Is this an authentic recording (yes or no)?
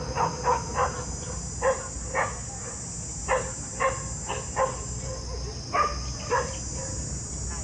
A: yes